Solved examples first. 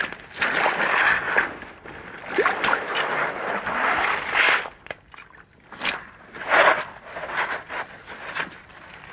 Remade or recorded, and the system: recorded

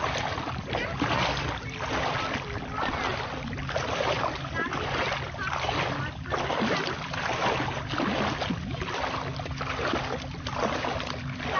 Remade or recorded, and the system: recorded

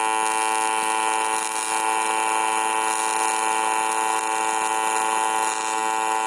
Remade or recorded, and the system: recorded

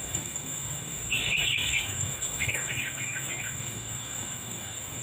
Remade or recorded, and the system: remade, codec, DAC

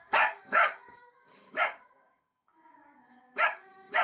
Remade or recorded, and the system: remade, codec, DAC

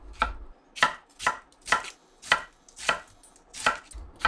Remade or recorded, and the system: recorded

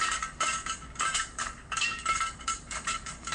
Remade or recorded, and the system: remade, codec, DAC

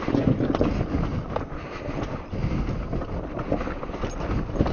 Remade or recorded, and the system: recorded